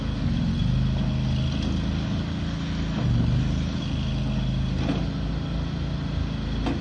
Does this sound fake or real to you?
real